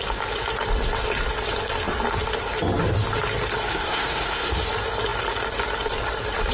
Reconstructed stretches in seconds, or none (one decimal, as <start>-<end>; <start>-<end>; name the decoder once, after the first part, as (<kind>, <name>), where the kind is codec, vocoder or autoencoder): 3.7-4.6 (codec, SNAC)